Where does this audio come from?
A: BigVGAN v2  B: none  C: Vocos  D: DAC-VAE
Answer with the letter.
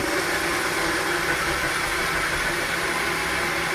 B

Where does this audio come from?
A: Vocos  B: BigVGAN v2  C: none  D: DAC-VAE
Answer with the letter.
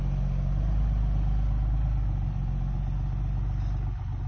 C